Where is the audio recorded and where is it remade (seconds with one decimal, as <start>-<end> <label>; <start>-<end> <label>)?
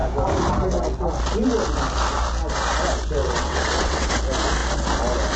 0.0-3.2 recorded; 3.2-4.1 remade; 4.1-5.4 recorded